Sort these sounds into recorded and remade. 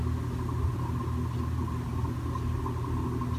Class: recorded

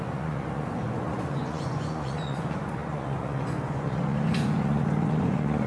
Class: remade